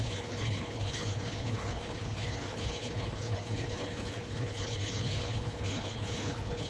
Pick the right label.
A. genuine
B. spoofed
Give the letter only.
B